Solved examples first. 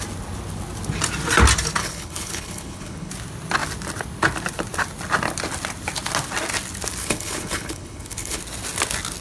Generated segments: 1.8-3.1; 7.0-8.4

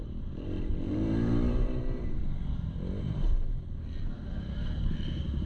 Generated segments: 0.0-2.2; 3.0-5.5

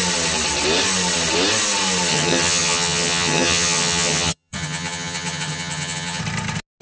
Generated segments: 2.1-6.2

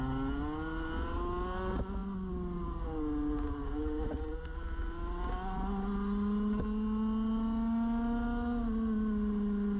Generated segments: none

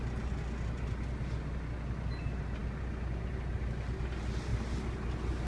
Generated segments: none

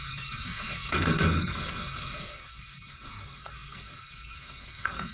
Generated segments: 0.0-5.1

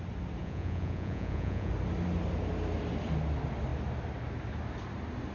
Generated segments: 0.4-1.7

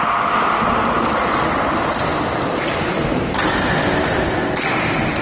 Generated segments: 2.1-5.2